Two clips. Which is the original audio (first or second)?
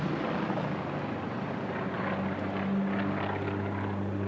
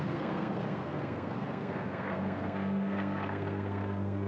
first